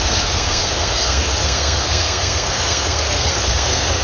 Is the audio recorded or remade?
remade